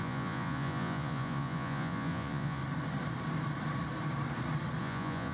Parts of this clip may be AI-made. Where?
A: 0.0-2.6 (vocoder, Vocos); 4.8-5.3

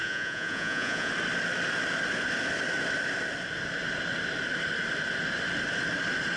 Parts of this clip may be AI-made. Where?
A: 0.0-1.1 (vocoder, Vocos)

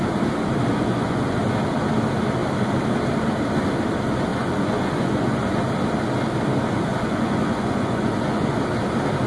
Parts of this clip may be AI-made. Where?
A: 0.7-1.4 (vocoder, Vocos); 4.3-5.6; 6.9-8.6